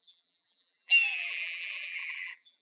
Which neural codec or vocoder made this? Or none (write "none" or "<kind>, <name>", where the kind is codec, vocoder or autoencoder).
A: vocoder, BigVGAN v2